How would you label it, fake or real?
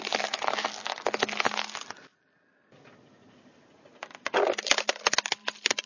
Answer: real